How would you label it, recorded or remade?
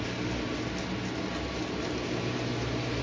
recorded